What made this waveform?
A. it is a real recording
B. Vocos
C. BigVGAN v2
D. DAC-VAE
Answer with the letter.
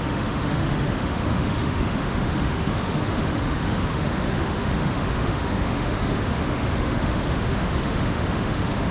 D